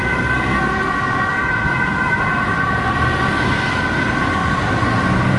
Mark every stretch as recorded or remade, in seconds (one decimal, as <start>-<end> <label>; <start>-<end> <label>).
0.0-5.4 recorded